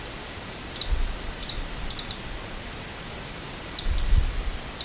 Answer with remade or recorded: recorded